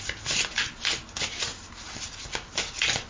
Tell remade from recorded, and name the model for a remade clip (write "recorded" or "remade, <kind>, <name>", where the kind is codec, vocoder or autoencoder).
recorded